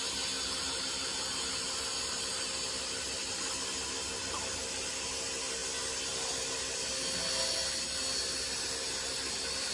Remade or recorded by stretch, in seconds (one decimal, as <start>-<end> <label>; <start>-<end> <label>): 0.0-9.7 recorded